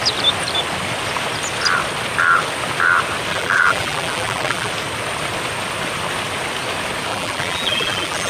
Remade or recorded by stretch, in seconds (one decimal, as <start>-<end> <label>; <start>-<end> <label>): 0.0-3.3 recorded; 3.3-4.7 remade; 4.7-7.1 recorded; 7.1-8.3 remade